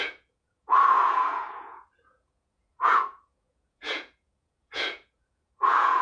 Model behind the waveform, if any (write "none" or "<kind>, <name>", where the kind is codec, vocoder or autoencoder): vocoder, Vocos